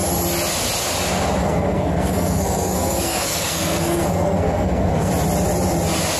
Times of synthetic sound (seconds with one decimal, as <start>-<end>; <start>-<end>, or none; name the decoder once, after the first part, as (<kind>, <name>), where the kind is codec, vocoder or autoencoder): 1.4-5.1 (codec, SNAC)